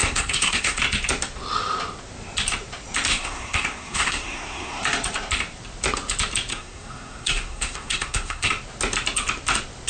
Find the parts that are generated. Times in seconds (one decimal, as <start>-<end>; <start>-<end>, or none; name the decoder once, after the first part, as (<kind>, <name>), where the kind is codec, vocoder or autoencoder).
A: 0.0-0.8 (codec, SNAC); 3.1-4.8; 6.5-8.5

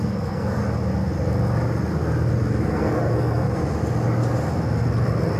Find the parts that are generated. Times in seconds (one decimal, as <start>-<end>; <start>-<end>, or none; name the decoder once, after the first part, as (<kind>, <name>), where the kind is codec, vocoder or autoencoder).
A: 0.0-0.6 (codec, SNAC); 2.6-3.6

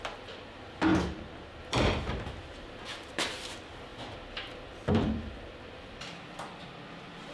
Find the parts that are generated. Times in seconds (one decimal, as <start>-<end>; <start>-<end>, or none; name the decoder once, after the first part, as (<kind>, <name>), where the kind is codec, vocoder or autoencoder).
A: 0.0-0.9 (vocoder, BigVGAN v2); 1.6-7.3

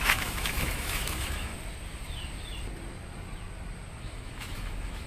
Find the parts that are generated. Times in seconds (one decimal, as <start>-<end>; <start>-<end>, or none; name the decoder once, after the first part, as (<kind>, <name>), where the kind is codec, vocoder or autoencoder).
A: 0.0-1.5 (autoencoder, DAC-VAE); 4.0-5.1

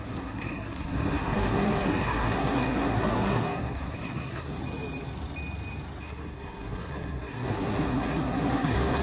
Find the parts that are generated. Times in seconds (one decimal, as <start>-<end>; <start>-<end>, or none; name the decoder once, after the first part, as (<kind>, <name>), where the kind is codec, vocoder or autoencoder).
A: 0.0-4.6 (codec, SNAC); 6.0-9.0